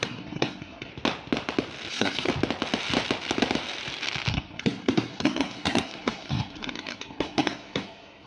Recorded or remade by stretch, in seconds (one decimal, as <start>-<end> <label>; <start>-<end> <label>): 0.0-0.9 remade; 0.9-1.9 recorded; 1.9-2.3 remade; 2.3-4.3 recorded; 4.3-8.3 remade